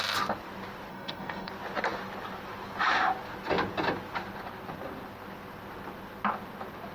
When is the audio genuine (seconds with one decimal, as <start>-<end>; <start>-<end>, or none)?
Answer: 0.0-0.9; 1.5-6.9